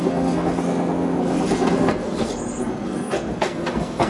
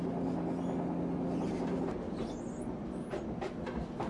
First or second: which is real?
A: second